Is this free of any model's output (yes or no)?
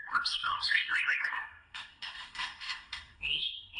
no